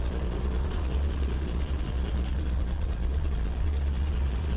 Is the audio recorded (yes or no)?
no